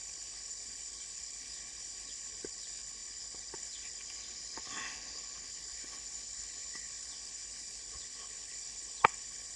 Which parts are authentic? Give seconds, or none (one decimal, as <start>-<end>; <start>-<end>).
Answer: none